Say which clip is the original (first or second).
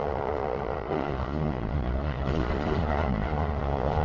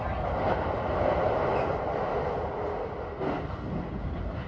second